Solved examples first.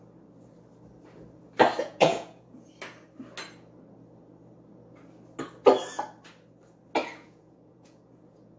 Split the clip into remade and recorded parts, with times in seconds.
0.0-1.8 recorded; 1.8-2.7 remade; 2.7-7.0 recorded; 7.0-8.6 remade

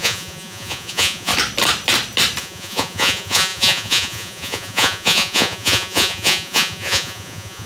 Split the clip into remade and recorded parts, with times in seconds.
0.0-1.3 remade; 1.3-2.4 recorded; 2.4-7.7 remade